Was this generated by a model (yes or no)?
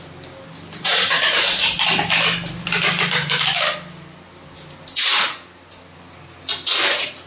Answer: no